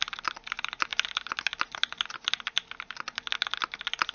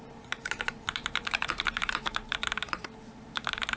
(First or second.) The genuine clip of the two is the first